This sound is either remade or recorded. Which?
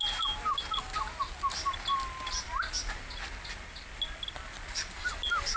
recorded